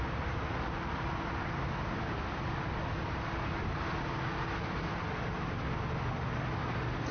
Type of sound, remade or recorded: recorded